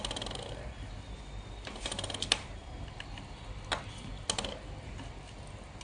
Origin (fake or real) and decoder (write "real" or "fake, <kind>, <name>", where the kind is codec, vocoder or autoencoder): real